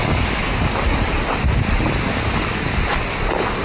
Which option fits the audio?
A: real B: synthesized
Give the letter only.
A